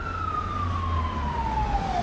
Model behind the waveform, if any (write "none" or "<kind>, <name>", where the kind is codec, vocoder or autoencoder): none